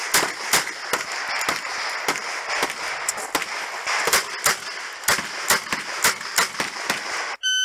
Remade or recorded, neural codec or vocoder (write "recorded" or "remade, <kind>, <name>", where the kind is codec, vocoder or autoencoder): recorded